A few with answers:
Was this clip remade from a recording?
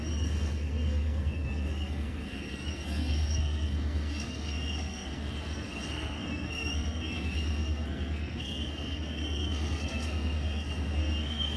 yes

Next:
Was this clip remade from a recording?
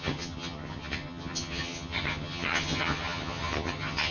yes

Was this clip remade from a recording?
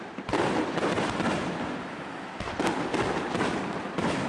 no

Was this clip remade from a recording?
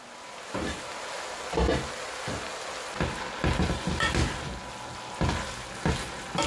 no